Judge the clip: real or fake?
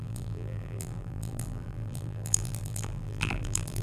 fake